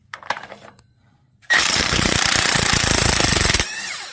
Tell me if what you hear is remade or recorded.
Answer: remade